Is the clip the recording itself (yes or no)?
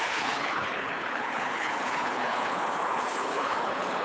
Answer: no